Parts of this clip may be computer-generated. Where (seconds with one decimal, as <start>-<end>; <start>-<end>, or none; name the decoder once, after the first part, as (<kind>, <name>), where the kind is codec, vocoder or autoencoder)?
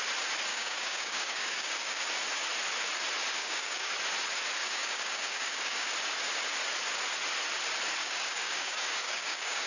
0.5-2.0 (codec, DAC); 3.4-3.9; 4.6-5.9; 8.0-9.7